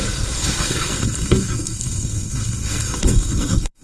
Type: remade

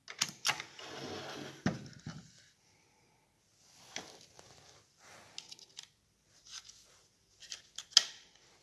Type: recorded